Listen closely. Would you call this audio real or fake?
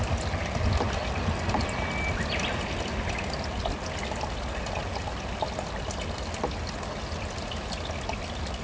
real